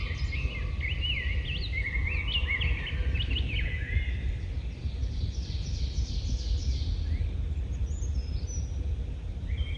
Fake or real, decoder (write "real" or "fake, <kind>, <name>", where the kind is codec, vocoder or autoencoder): real